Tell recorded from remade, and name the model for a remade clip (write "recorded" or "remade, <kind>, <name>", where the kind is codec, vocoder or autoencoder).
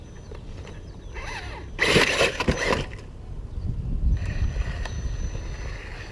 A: recorded